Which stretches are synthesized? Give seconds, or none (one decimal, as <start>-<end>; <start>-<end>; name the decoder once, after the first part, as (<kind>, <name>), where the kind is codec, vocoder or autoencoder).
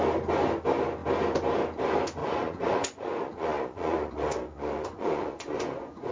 2.2-6.1 (vocoder, Vocos)